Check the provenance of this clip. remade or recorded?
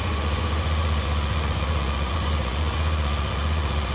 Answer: remade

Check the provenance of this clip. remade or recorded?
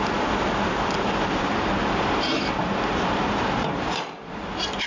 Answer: remade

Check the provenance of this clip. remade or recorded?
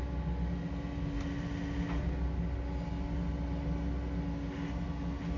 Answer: recorded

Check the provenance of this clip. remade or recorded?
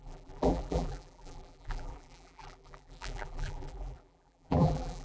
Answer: remade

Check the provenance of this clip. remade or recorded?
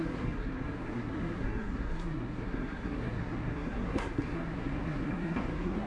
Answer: remade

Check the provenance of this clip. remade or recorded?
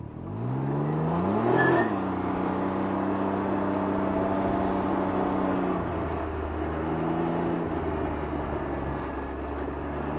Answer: recorded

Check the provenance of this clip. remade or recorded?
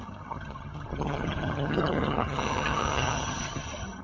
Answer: remade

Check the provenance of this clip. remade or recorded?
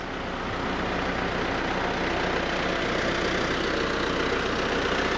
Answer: recorded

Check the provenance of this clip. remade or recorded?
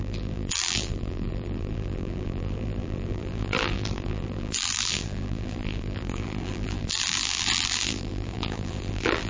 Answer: remade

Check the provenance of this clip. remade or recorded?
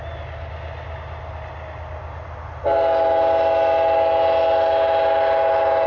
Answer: recorded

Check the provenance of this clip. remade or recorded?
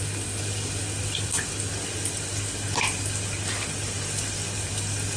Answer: recorded